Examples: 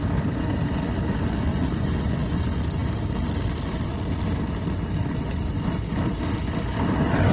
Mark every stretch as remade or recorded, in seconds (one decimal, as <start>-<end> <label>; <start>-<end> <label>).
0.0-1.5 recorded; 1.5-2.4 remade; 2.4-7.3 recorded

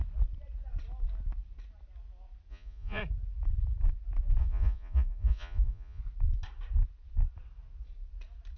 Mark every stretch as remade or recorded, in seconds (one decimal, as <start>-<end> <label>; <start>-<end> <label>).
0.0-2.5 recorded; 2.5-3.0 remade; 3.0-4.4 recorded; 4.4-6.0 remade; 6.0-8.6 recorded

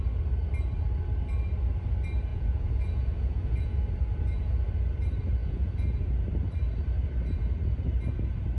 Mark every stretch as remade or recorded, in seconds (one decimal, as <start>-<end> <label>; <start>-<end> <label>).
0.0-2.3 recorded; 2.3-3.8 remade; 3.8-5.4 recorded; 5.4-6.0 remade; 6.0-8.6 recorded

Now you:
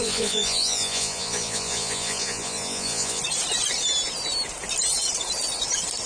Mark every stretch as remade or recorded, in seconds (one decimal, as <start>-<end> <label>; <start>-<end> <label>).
0.0-3.2 remade; 3.2-6.1 recorded

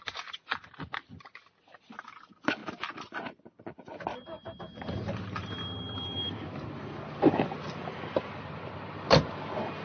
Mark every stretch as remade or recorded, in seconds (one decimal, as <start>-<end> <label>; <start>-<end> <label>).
0.0-9.8 recorded

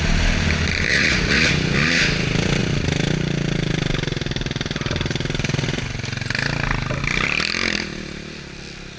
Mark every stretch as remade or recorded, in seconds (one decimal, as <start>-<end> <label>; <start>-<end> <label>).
0.0-0.9 recorded; 0.9-1.5 remade; 1.5-9.0 recorded

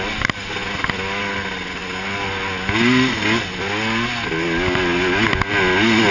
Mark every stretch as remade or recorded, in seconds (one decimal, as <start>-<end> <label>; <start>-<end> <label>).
0.0-6.1 recorded

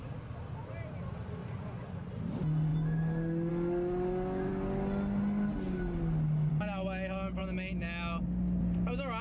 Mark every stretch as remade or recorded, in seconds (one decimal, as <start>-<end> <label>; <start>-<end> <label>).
0.0-1.4 recorded; 1.4-2.0 remade; 2.0-9.2 recorded